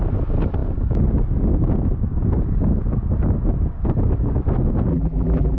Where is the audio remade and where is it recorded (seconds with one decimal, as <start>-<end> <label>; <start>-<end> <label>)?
0.0-4.9 recorded; 4.9-5.6 remade